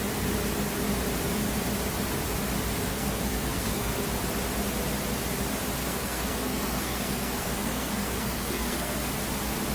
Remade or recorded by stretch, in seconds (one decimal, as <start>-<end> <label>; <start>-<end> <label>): 0.0-2.9 recorded; 2.9-4.0 remade; 4.0-5.8 recorded; 5.8-9.1 remade; 9.1-9.7 recorded